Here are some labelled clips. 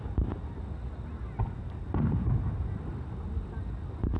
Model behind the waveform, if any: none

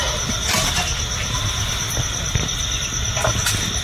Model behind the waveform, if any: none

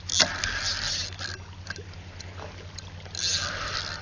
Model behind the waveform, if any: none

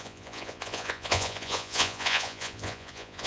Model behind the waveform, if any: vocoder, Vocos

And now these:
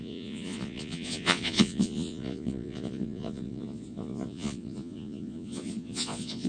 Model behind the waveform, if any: vocoder, Vocos